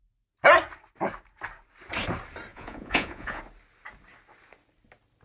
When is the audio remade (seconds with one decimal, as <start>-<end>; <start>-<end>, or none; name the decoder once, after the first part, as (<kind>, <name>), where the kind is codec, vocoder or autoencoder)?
2.5-3.4 (vocoder, Vocos)